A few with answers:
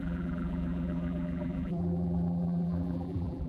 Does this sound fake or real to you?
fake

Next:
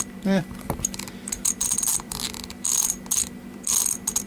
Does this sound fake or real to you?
fake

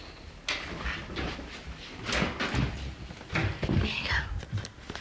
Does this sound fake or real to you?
real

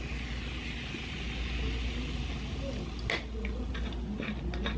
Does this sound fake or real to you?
real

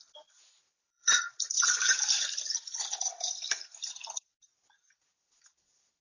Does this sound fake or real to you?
fake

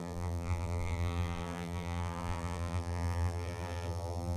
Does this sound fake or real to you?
fake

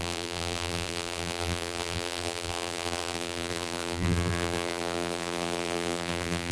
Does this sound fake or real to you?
fake